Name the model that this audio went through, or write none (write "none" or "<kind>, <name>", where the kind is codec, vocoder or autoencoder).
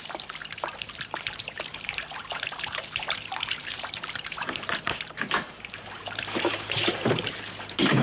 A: vocoder, BigVGAN v2